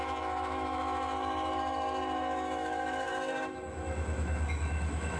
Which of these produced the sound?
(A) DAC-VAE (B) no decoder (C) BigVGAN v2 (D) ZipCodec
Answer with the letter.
A